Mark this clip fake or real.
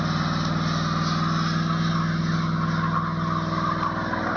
real